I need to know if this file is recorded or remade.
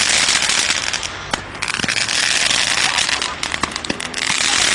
recorded